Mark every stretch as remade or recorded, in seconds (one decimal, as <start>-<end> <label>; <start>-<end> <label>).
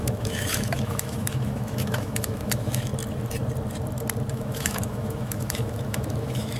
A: 0.0-2.9 remade; 2.9-4.3 recorded; 4.3-6.6 remade